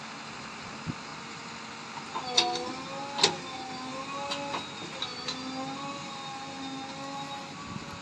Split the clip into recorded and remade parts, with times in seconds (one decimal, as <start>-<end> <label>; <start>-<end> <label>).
0.0-8.0 recorded